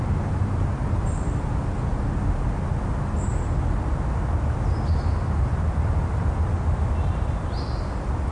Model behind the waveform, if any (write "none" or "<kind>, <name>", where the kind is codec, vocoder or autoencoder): none